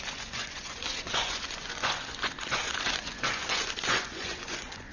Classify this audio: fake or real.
fake